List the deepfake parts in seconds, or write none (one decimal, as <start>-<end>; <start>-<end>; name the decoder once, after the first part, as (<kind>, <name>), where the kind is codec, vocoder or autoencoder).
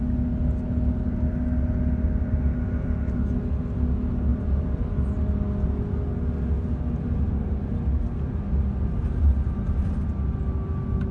none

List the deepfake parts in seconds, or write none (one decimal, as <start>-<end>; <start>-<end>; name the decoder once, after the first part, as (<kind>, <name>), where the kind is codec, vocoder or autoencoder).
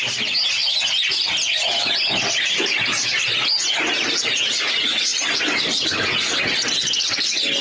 none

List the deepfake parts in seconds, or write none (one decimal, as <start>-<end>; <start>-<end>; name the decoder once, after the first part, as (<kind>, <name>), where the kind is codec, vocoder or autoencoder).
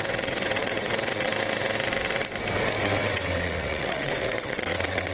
0.0-1.3 (vocoder, WaveNeXt); 2.8-5.1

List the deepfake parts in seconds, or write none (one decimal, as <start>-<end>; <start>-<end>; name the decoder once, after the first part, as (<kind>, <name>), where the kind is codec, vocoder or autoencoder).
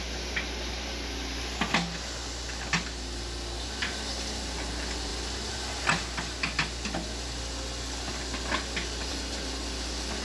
none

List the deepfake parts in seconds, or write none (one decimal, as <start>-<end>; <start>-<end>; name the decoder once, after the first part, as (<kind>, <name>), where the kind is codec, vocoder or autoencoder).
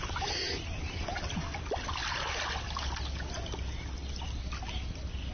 none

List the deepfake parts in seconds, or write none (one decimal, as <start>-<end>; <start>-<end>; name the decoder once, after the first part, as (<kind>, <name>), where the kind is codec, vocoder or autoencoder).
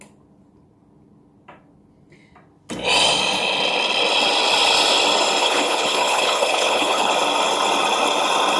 5.4-7.1 (codec, HILCodec)